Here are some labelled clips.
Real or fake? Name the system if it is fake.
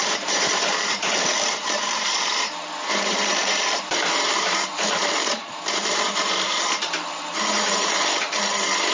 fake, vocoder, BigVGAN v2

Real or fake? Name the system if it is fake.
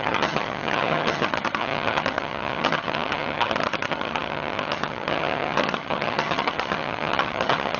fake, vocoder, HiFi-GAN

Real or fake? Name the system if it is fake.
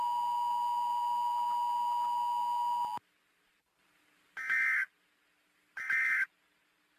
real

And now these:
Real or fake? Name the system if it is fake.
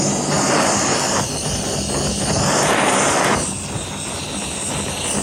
real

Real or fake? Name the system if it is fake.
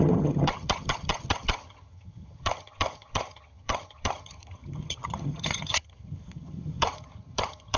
fake, vocoder, HiFi-GAN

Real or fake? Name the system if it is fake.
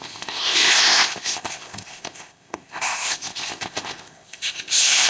fake, codec, ZipCodec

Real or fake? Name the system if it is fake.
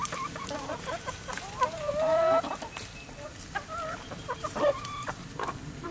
fake, vocoder, BigVGAN v2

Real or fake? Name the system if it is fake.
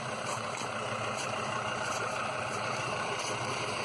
fake, vocoder, BigVGAN v2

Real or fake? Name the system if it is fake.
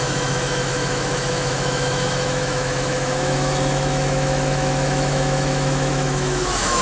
fake, autoencoder, DAC-VAE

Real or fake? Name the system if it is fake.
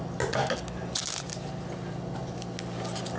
real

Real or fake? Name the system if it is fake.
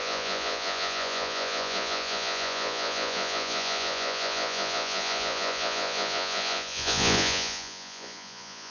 fake, vocoder, Vocos